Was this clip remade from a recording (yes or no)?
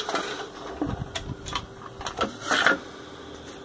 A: no